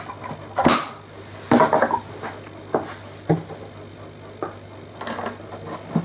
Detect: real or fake real